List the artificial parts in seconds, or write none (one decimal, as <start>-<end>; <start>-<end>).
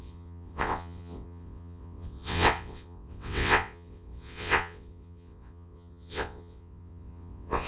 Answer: 0.0-7.7